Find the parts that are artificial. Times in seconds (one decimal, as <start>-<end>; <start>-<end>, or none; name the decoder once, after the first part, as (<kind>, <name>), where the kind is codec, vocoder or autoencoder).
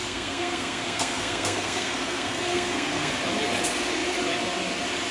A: 0.0-3.1 (codec, SNAC)